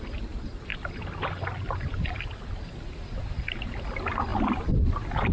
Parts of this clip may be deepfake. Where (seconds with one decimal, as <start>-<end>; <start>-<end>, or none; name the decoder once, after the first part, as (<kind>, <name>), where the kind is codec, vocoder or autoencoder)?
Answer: none